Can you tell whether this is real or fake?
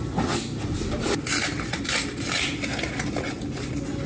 real